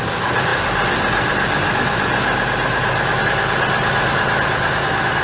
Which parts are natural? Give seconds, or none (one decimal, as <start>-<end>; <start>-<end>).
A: 0.0-5.2